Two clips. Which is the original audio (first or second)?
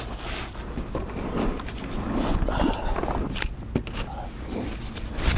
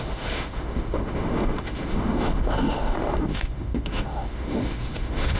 first